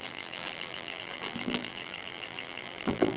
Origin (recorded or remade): remade